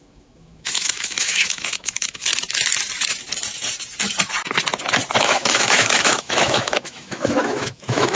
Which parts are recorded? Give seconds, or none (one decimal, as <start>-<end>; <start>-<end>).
2.3-5.2